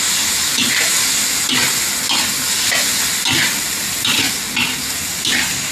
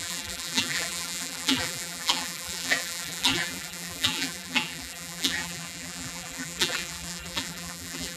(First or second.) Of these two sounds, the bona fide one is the first